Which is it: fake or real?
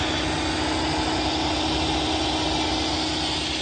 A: real